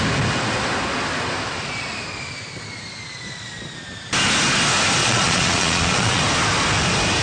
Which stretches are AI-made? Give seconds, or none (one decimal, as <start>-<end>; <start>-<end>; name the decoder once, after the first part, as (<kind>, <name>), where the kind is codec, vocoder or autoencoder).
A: 5.0-6.2 (vocoder, Vocos)

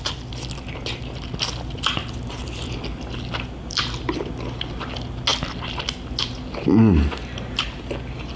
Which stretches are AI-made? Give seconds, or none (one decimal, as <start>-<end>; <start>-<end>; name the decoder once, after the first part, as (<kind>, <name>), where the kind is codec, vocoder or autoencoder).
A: none

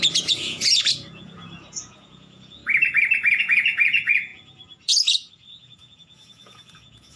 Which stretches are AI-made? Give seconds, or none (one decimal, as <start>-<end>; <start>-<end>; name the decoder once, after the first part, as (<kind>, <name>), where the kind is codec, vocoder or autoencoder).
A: 0.0-2.6 (vocoder, Vocos); 3.4-7.2

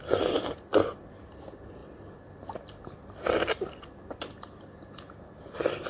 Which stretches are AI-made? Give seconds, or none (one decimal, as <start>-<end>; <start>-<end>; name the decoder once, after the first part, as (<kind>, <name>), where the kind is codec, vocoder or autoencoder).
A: none

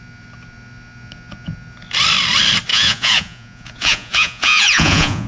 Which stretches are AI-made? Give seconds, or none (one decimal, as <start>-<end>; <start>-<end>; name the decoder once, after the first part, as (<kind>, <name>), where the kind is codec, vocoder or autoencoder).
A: 2.7-5.3 (vocoder, Vocos)

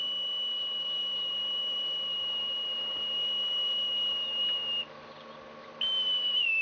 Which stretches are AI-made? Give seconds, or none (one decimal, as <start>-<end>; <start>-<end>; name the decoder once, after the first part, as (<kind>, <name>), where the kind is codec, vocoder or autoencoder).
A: none